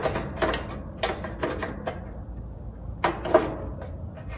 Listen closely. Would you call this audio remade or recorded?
recorded